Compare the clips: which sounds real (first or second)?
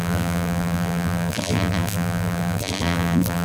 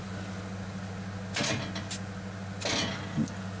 second